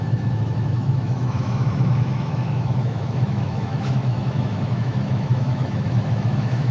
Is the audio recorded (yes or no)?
no